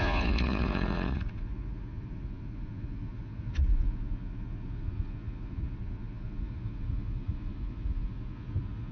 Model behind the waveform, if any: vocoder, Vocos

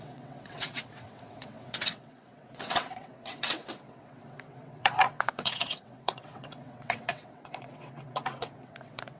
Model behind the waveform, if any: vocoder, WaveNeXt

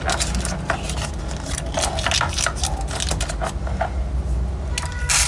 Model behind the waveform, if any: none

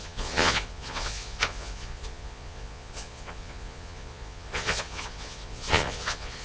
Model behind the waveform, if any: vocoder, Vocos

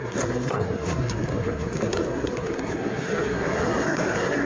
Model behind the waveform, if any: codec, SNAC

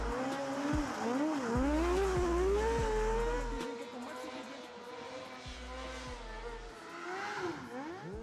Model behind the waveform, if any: none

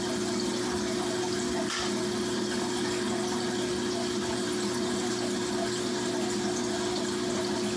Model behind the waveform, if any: none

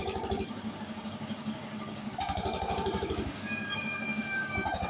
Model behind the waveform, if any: codec, DAC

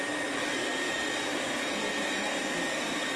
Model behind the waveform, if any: vocoder, BigVGAN v2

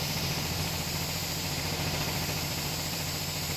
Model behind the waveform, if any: vocoder, BigVGAN v2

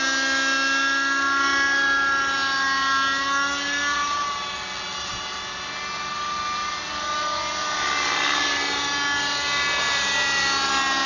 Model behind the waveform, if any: none